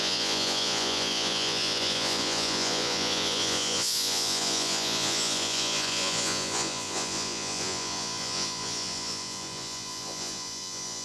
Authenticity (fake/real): fake